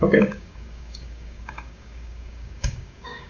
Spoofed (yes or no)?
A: yes